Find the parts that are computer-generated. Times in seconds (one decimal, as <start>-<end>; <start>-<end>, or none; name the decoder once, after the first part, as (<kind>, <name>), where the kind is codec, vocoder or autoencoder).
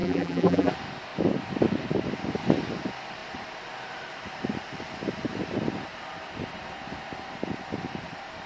0.0-0.7 (vocoder, BigVGAN v2)